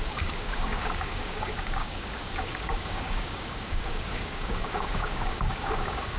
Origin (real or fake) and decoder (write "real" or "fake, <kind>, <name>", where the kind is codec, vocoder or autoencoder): fake, codec, DAC